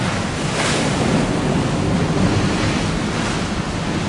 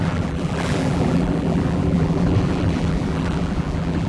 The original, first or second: first